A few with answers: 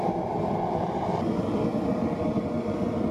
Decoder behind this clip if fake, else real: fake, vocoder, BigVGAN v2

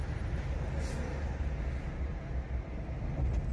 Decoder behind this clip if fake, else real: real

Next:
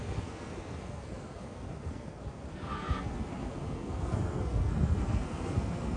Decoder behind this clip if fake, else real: fake, codec, SNAC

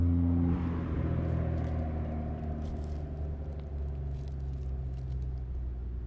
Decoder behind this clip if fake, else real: real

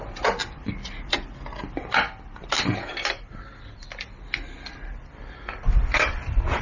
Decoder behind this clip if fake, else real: real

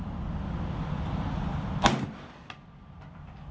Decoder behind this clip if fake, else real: real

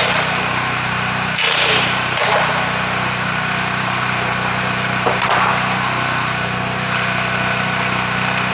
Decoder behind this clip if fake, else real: fake, vocoder, BigVGAN v2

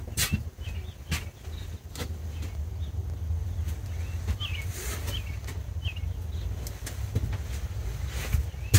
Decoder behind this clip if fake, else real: real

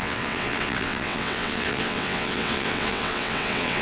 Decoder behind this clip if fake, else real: fake, vocoder, WaveNeXt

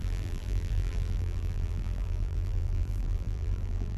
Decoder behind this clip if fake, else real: fake, vocoder, BigVGAN v2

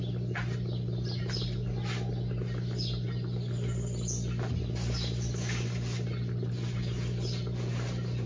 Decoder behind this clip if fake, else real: real